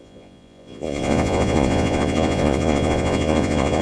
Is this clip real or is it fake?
fake